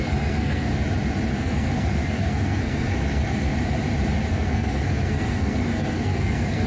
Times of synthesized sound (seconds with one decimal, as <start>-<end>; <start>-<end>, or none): 0.0-0.7; 1.3-3.5; 4.3-6.7